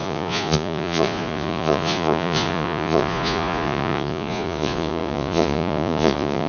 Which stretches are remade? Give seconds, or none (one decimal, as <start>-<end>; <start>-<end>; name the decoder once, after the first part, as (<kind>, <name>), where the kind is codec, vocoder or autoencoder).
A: 0.0-6.5 (vocoder, Vocos)